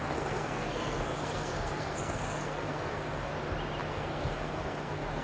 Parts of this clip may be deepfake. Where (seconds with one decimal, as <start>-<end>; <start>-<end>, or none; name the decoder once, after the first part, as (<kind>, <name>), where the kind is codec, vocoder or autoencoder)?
0.0-3.3 (codec, SNAC); 3.9-5.2